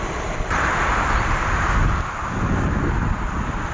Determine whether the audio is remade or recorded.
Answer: recorded